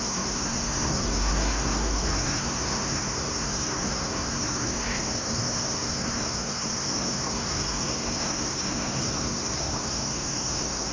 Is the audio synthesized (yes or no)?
yes